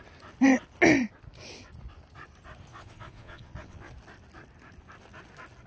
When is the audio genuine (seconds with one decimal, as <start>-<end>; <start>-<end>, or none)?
0.0-2.7; 3.9-5.7